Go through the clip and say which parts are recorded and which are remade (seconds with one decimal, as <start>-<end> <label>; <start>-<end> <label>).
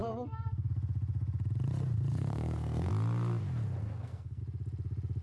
0.0-0.7 remade; 0.7-2.1 recorded; 2.1-2.9 remade; 2.9-3.8 recorded; 3.8-4.4 remade; 4.4-5.2 recorded